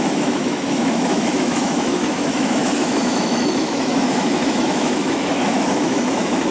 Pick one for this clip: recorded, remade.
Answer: remade